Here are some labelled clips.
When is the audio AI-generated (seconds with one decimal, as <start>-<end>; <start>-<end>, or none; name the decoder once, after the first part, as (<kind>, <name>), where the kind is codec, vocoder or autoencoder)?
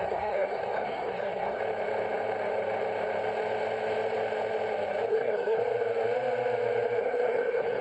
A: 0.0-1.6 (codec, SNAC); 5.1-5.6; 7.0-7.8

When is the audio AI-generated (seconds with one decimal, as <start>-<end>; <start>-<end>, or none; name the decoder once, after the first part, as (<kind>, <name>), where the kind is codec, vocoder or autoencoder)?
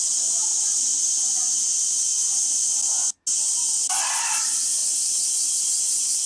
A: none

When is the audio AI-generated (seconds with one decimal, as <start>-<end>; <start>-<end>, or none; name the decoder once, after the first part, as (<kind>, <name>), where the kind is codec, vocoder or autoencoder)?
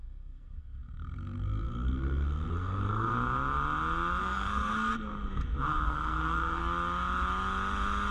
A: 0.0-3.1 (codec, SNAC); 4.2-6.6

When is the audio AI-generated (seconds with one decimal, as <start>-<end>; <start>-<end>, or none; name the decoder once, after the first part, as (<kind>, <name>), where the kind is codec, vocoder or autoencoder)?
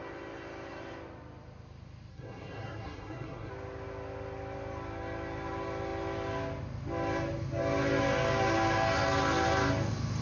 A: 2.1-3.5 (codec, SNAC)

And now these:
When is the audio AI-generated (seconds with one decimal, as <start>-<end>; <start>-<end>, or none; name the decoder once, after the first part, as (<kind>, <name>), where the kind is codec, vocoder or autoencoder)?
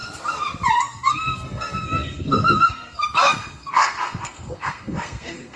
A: 0.8-5.6 (codec, SNAC)